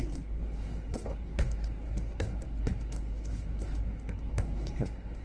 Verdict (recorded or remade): remade